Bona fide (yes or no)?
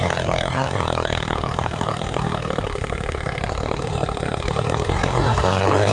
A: no